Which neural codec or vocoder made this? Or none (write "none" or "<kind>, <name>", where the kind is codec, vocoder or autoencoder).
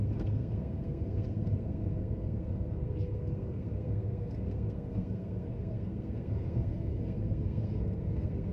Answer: codec, SNAC